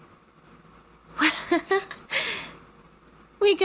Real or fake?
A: real